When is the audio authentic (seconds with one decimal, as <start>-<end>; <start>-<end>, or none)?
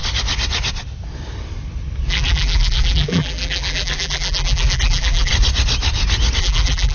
0.0-2.1; 5.3-6.4